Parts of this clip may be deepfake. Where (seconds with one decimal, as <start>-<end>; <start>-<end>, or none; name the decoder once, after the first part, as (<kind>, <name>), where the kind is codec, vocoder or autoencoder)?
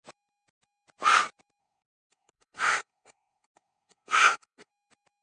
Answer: 1.6-4.7 (codec, SNAC)